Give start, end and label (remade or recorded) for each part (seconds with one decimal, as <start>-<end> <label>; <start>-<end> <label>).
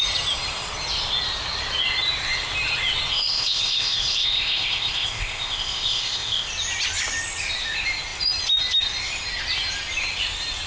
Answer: 0.0-3.1 recorded; 3.1-6.5 remade; 6.5-10.7 recorded